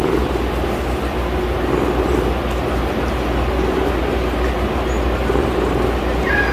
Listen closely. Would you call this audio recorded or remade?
recorded